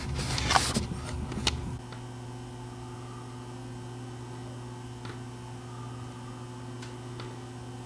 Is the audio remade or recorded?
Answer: recorded